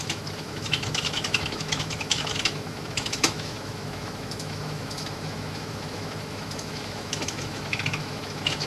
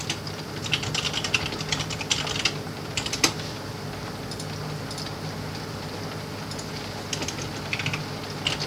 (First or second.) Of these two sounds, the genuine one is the second